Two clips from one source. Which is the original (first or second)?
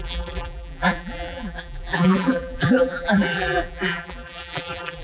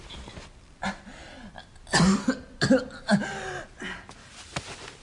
second